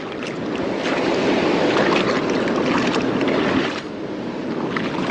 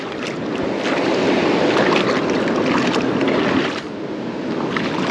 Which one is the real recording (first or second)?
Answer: second